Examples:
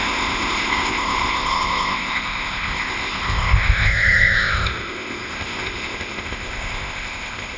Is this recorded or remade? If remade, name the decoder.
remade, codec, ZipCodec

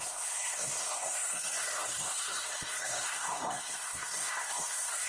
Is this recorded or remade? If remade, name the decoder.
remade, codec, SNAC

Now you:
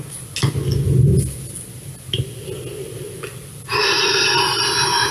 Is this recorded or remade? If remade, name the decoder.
recorded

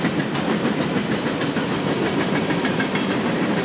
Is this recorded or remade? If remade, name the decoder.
recorded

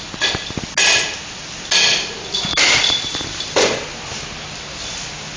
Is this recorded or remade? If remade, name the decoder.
recorded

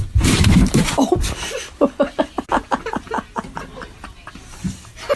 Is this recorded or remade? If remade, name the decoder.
recorded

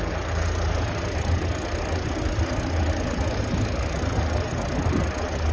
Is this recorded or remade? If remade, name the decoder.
recorded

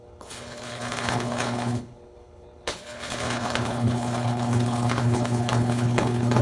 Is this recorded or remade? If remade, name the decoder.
remade, codec, HILCodec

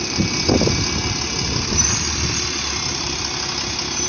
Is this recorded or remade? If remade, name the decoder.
recorded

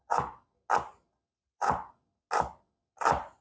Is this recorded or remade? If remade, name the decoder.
recorded